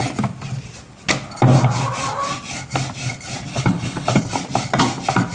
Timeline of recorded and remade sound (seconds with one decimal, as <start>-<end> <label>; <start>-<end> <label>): 0.0-3.5 recorded; 3.5-4.2 remade; 4.2-5.3 recorded

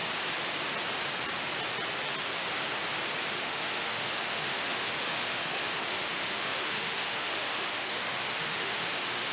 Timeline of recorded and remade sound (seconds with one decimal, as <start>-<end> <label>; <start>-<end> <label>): 0.0-3.3 recorded; 3.3-9.3 remade